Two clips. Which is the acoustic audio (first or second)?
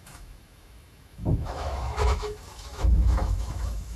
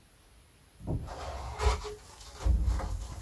second